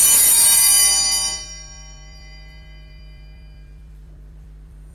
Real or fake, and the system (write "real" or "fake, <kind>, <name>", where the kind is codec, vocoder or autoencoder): fake, vocoder, BigVGAN v2